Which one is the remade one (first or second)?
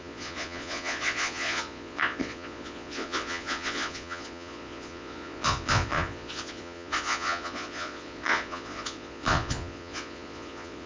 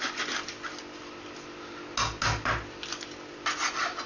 first